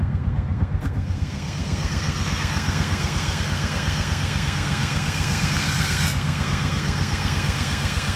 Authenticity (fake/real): fake